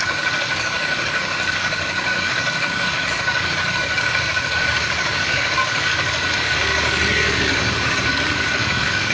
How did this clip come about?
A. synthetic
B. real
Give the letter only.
A